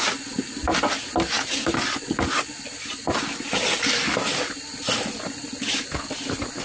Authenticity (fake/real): real